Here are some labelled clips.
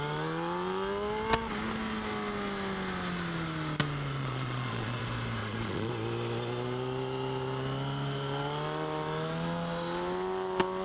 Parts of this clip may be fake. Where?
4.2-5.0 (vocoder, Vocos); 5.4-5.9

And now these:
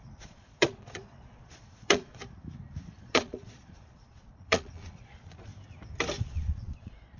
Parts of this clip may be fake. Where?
0.0-2.2 (vocoder, Vocos); 3.0-5.5; 6.3-7.2

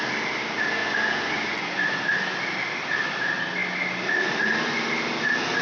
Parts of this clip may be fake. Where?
0.8-2.0 (vocoder, Vocos)

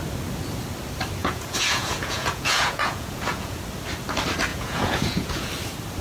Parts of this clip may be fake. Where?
1.2-3.6 (vocoder, Vocos); 4.5-5.5

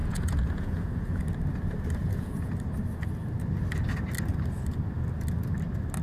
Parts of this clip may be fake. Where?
0.0-1.2 (vocoder, Vocos); 2.0-2.5

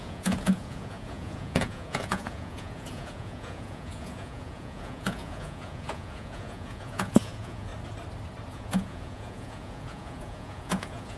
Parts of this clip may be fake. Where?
0.0-7.7 (vocoder, Vocos); 8.5-11.2